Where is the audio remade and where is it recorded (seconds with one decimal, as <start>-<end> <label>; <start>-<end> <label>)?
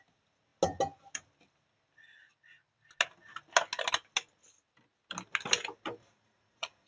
0.0-6.0 recorded; 6.0-6.9 remade